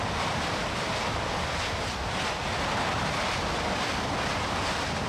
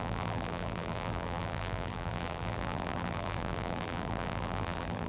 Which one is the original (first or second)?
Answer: first